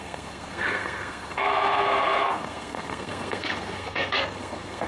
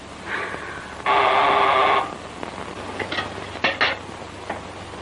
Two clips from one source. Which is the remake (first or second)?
first